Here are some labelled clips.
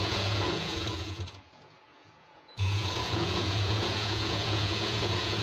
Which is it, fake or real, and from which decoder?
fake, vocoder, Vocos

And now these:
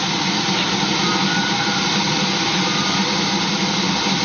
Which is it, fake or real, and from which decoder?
real